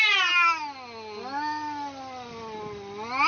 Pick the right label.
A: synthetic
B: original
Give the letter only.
B